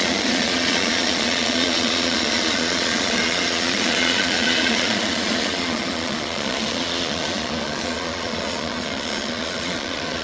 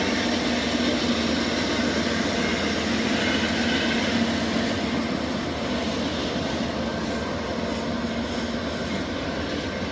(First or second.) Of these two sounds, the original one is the second